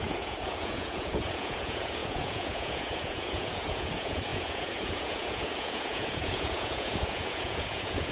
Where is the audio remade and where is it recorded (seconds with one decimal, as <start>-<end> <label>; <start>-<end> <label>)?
0.0-8.1 remade